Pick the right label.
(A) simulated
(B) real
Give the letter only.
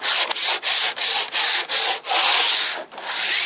B